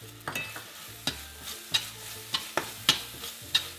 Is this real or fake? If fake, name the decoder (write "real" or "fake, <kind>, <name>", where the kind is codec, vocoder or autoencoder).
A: real